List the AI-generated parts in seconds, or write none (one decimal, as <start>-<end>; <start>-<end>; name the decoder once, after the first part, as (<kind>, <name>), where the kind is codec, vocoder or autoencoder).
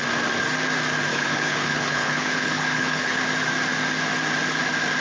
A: 1.1-3.2 (codec, HILCodec)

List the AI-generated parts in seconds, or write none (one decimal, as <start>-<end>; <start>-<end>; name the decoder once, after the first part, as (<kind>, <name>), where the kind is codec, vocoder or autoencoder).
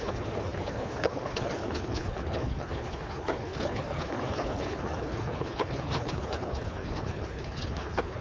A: 0.0-8.2 (codec, HILCodec)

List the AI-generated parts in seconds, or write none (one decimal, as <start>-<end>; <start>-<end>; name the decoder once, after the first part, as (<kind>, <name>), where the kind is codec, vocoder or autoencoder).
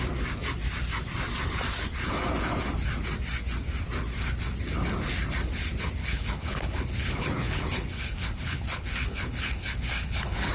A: 6.0-10.5 (codec, HILCodec)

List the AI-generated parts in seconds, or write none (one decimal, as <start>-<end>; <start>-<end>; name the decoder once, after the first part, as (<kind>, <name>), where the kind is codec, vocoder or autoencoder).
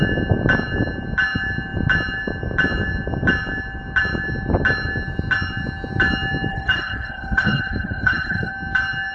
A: 6.5-8.5 (codec, HILCodec)